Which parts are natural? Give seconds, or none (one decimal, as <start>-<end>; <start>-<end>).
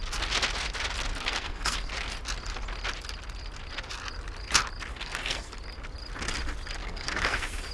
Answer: 0.0-1.1; 1.9-4.9; 5.5-6.8